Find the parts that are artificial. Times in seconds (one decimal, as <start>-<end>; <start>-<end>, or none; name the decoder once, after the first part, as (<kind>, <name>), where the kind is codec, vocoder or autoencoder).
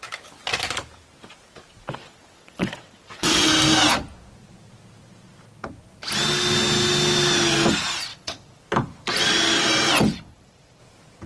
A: 2.0-3.5 (vocoder, WaveNeXt); 8.1-8.6; 10.1-10.8